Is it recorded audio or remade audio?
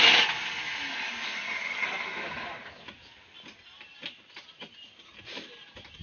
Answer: recorded